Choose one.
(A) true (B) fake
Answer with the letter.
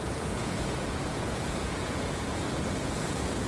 B